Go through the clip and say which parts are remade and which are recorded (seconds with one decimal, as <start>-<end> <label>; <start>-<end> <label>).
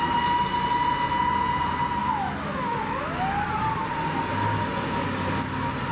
0.0-2.0 recorded; 2.0-3.2 remade; 3.2-5.9 recorded